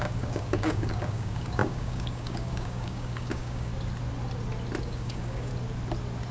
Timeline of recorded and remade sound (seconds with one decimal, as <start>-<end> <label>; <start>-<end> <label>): 0.0-3.7 remade; 3.7-4.8 recorded; 4.8-5.5 remade; 5.5-6.3 recorded